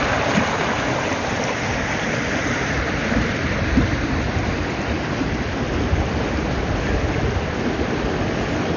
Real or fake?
real